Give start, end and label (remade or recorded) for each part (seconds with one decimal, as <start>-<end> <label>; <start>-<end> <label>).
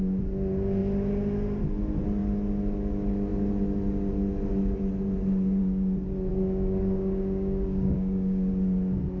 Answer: 0.0-6.3 recorded; 6.3-8.5 remade; 8.5-9.2 recorded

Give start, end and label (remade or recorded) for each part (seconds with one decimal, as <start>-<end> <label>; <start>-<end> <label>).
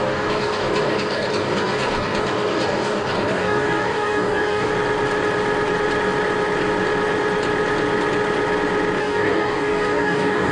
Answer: 0.0-4.7 remade; 4.7-9.0 recorded; 9.0-10.5 remade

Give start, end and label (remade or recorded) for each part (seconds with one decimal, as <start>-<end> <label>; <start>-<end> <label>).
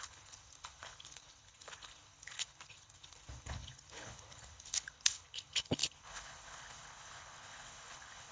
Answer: 0.0-8.3 remade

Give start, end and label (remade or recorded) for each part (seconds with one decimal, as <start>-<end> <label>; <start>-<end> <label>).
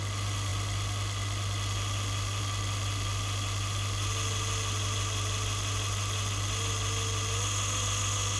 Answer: 0.0-8.4 recorded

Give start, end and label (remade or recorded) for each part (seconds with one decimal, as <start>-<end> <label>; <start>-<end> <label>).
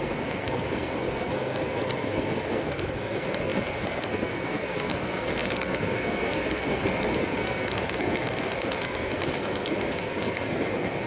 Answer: 0.0-11.1 remade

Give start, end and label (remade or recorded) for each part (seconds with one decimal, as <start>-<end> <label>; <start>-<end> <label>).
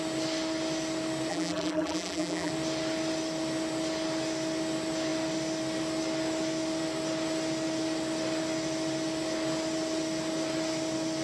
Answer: 0.0-1.3 recorded; 1.3-2.5 remade; 2.5-11.2 recorded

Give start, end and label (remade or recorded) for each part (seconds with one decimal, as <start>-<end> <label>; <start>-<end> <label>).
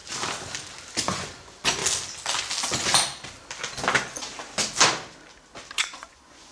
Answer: 0.0-1.0 recorded; 1.0-1.8 remade; 1.8-5.7 recorded; 5.7-6.5 remade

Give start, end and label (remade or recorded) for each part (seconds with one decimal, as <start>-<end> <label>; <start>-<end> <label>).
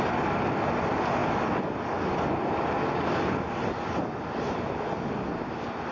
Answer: 0.0-5.9 recorded